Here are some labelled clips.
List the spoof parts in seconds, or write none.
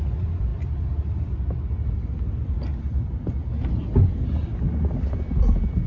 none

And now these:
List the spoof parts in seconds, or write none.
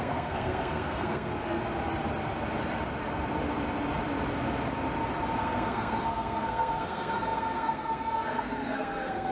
0.0-1.3 (codec, SNAC); 5.4-9.3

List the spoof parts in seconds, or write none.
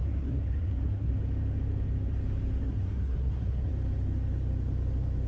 0.0-1.1 (codec, SNAC); 2.6-3.7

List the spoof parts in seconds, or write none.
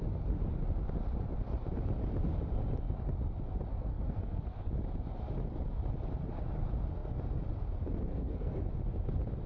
3.7-4.7 (codec, SNAC); 8.1-8.7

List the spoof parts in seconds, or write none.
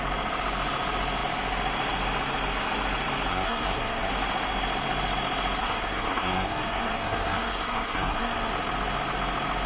3.3-4.1 (codec, SNAC); 5.6-8.5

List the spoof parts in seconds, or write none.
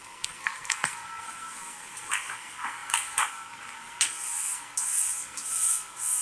0.0-6.2 (codec, SNAC)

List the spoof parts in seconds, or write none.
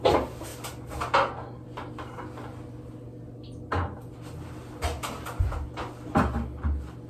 none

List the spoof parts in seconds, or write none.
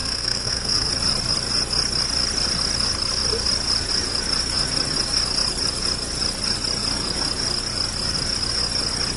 0.0-0.9 (codec, SNAC)